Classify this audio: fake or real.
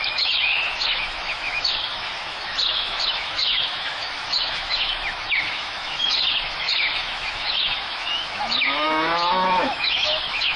fake